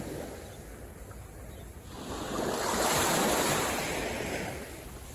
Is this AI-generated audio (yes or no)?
no